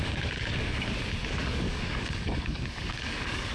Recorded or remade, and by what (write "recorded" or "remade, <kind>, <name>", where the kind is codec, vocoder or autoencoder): remade, codec, DAC